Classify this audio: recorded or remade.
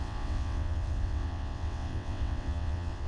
remade